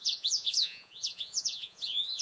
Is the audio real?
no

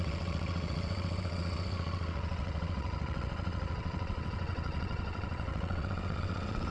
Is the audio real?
no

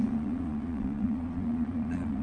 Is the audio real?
no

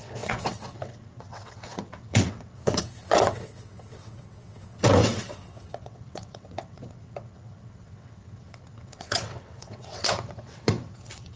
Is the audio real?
no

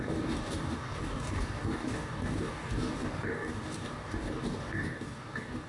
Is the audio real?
no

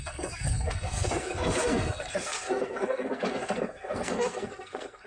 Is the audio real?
no